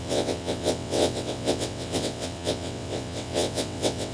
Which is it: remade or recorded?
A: remade